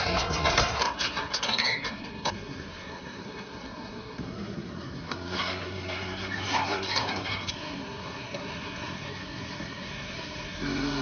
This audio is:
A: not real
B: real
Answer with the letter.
A